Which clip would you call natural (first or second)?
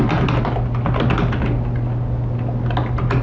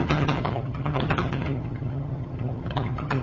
first